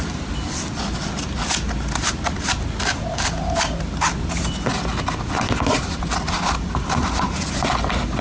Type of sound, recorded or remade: recorded